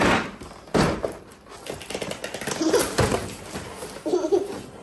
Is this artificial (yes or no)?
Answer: no